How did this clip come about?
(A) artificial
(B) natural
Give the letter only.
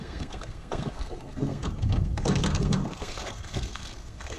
A